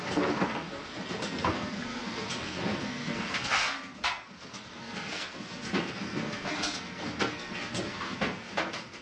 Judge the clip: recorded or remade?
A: remade